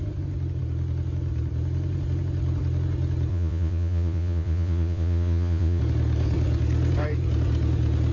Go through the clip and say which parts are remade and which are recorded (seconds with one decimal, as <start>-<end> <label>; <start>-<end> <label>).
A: 0.0-3.3 recorded; 3.3-5.8 remade; 5.8-8.1 recorded